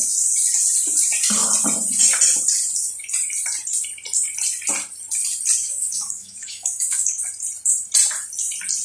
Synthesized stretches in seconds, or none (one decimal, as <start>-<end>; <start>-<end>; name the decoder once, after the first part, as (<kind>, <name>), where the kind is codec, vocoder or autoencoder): 5.6-7.2 (autoencoder, DAC-VAE)